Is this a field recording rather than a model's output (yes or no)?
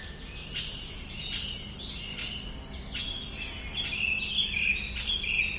yes